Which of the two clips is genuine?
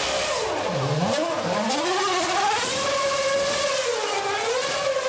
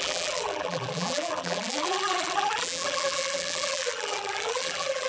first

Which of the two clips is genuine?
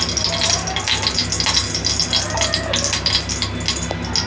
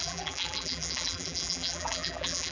first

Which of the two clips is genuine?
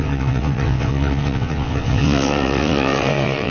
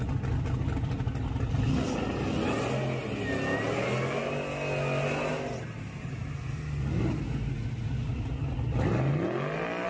second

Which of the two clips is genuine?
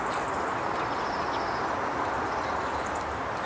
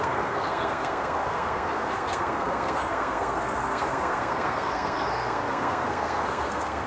first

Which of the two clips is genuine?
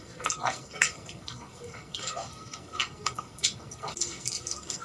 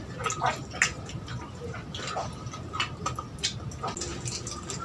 second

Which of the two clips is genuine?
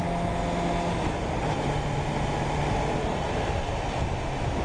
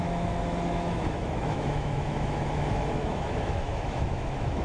first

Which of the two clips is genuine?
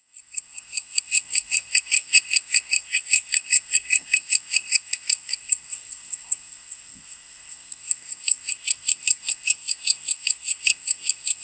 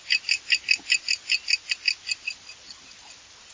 second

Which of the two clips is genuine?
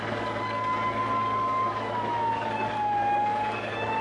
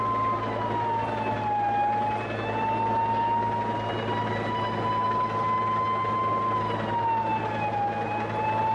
second